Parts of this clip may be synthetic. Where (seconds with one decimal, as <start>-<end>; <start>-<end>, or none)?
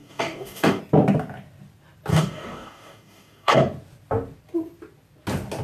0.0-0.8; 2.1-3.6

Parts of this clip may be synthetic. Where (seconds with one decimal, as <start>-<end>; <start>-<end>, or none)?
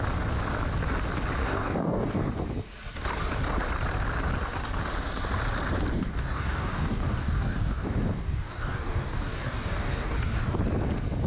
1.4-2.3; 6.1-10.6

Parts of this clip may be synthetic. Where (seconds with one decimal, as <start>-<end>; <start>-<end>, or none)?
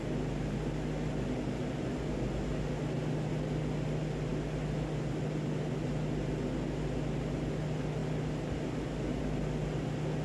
none